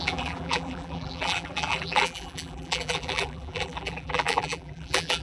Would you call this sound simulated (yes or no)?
yes